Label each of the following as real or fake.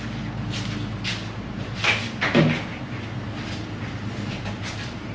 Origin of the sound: real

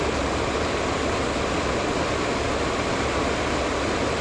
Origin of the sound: real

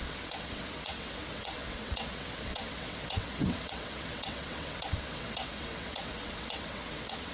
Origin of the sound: fake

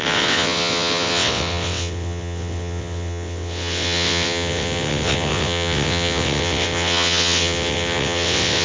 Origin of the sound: fake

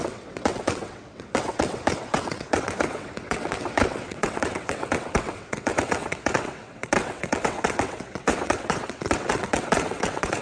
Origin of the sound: fake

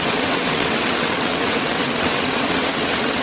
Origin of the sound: fake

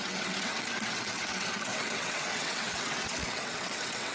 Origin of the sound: fake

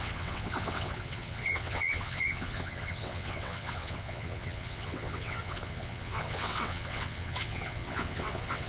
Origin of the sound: fake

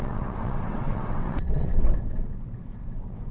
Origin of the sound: fake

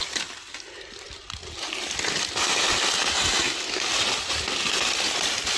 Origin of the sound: real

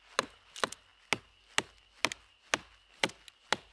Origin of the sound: real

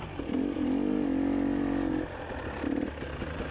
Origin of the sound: real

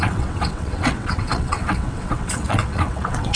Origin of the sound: fake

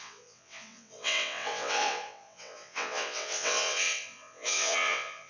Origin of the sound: fake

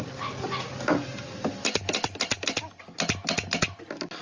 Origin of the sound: real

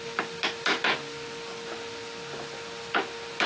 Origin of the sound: real